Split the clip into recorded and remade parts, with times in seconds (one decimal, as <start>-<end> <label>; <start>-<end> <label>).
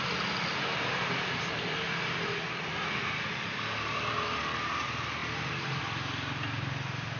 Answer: 0.0-7.2 recorded